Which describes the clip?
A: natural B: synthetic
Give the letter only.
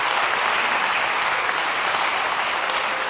A